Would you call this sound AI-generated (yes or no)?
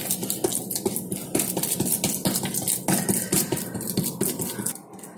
no